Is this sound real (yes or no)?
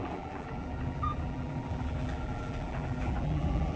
no